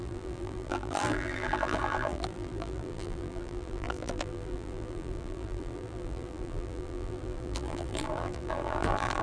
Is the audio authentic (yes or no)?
no